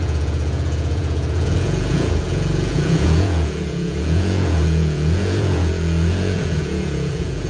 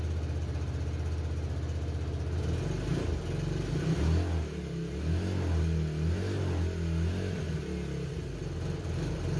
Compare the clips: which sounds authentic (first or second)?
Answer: second